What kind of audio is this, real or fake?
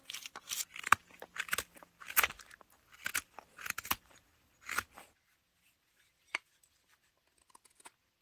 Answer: real